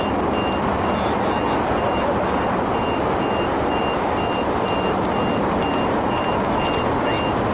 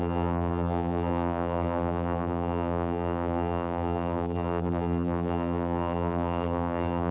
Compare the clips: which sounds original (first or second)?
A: first